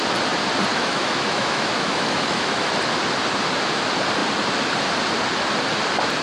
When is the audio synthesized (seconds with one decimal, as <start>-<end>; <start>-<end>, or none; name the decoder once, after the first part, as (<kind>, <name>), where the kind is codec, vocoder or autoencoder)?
0.7-2.7 (autoencoder, DAC-VAE)